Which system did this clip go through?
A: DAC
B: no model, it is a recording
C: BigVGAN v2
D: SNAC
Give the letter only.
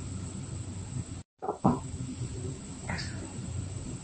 C